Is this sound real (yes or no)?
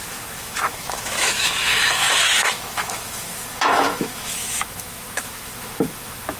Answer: no